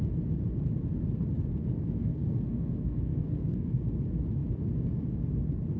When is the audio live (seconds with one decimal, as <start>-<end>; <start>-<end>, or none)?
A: 0.0-2.0; 3.8-5.8